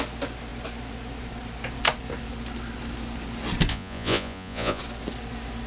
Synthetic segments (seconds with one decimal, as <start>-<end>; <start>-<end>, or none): 3.7-4.8